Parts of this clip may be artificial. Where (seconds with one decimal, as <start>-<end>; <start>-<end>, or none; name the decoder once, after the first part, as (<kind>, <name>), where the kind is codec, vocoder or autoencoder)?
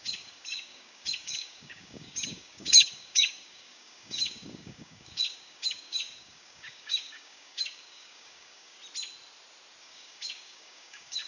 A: 0.0-8.8 (codec, DAC); 9.8-11.3